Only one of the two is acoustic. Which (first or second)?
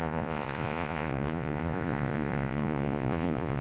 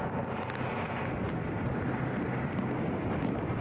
second